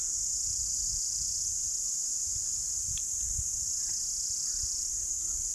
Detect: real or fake real